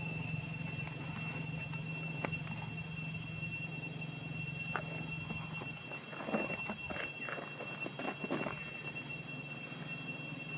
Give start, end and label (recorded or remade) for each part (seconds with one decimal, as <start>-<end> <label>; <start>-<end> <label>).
0.0-10.6 recorded